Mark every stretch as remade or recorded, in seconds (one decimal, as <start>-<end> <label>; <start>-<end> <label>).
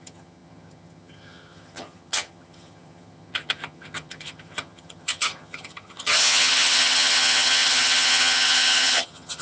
0.0-9.4 remade